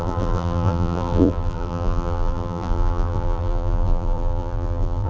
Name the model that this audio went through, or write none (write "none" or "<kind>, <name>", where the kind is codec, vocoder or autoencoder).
vocoder, BigVGAN v2